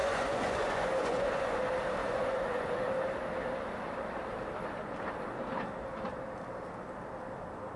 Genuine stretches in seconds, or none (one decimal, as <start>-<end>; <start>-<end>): 1.6-2.0; 2.9-7.8